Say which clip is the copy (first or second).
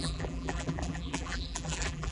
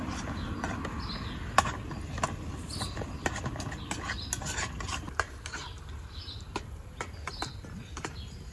first